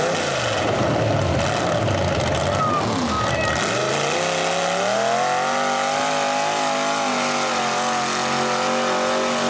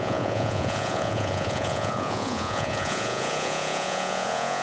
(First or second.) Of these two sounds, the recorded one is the first